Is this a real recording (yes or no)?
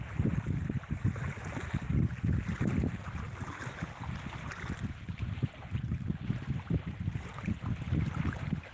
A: yes